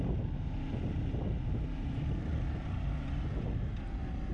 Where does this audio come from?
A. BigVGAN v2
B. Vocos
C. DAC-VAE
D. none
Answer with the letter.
D